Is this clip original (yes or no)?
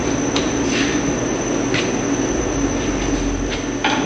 yes